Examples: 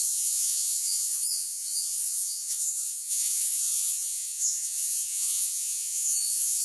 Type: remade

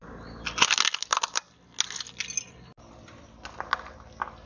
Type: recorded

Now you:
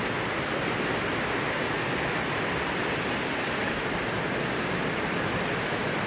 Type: recorded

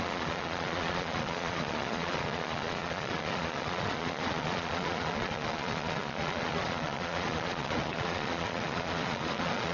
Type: remade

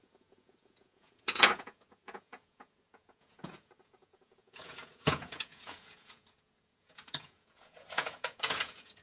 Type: remade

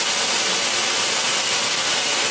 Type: recorded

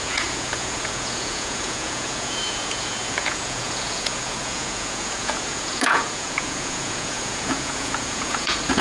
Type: remade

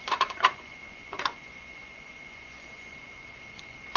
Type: remade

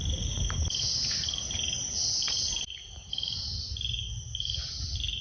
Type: recorded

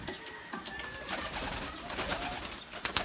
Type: recorded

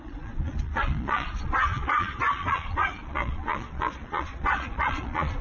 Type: remade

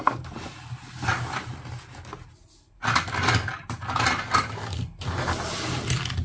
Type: recorded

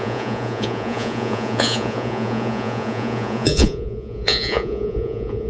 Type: remade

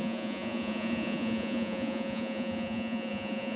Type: remade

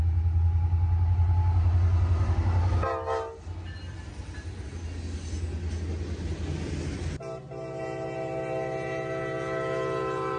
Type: recorded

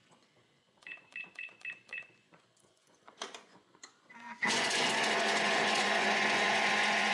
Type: remade